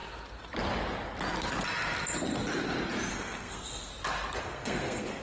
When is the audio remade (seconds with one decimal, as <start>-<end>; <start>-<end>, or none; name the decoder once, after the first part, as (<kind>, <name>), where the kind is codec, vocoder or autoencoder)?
3.1-3.9 (codec, SNAC); 4.4-5.2